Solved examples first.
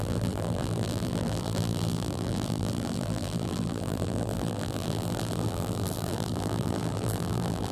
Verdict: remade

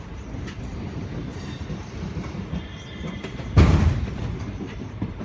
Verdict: remade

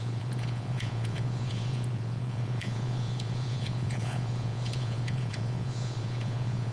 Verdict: remade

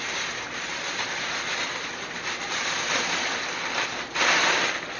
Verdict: recorded